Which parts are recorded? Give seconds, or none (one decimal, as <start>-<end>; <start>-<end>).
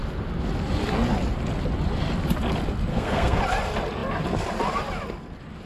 0.0-2.9; 3.4-5.7